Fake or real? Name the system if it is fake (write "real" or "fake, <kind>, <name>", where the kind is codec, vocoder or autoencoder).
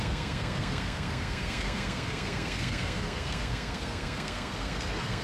fake, codec, SNAC